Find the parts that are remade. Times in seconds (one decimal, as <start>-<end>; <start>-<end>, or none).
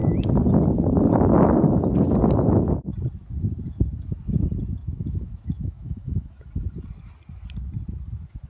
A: 4.8-6.4